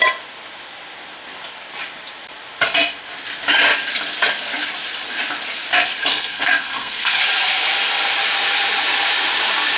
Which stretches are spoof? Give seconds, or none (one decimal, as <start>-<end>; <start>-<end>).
6.1-7.2